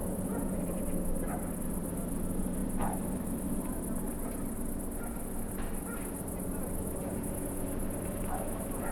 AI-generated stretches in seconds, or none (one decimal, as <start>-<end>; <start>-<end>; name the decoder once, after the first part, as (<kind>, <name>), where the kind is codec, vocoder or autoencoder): 0.0-0.6 (vocoder, Vocos); 7.0-7.8